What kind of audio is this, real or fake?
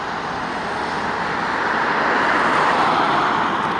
real